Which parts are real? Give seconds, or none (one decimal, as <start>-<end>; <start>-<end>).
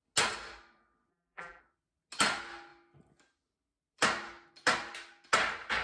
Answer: 0.0-1.1; 1.6-5.8